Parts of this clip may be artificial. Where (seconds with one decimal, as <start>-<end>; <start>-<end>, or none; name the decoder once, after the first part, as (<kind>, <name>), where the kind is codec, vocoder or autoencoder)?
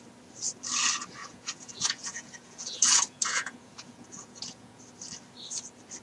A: 1.2-4.8 (vocoder, Vocos)